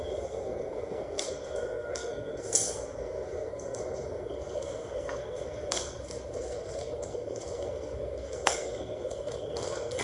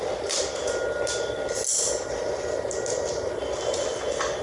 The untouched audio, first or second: second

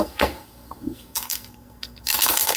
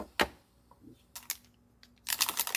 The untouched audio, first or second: second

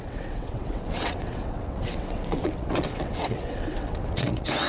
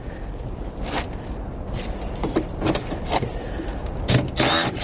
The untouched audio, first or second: second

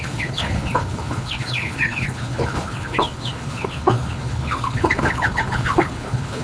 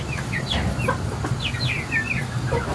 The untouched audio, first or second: second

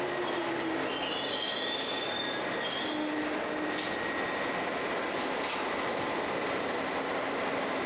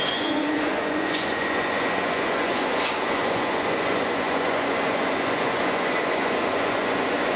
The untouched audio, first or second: first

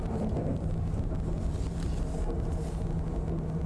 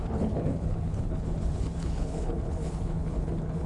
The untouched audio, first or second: first